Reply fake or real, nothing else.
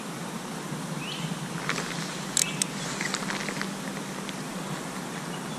real